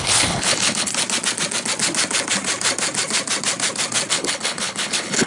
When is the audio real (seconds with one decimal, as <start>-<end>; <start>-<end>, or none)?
0.9-4.1